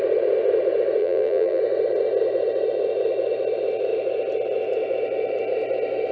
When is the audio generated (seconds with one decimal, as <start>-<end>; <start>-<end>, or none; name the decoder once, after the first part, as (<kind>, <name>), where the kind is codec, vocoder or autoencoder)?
1.0-1.6 (vocoder, BigVGAN v2)